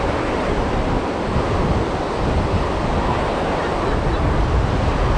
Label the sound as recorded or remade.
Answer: recorded